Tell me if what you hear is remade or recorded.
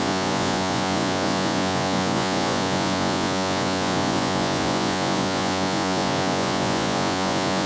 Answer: remade